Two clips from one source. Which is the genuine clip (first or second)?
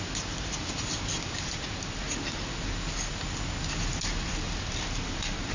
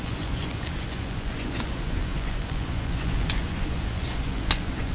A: first